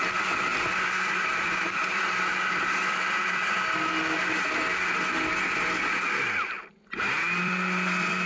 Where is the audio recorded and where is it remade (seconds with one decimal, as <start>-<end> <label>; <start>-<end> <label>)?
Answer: 0.0-0.5 recorded; 0.5-1.9 remade; 1.9-8.3 recorded